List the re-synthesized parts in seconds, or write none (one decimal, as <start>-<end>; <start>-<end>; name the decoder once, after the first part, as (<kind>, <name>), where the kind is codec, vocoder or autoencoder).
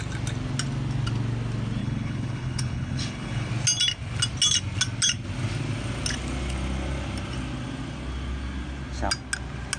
1.8-3.5 (codec, HILCodec)